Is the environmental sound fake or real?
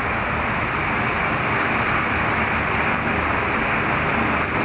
real